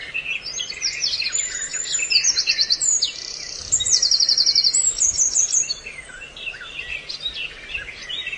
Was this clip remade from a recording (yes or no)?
yes